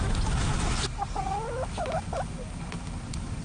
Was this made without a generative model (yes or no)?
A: yes